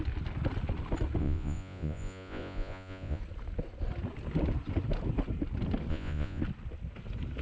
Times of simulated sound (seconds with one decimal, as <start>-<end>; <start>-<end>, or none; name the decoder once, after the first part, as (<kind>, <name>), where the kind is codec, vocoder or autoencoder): 1.2-3.2 (vocoder, Vocos); 5.9-6.4